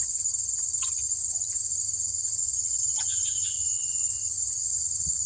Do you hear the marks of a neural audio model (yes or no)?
yes